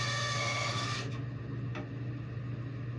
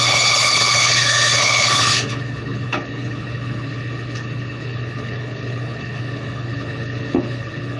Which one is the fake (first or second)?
second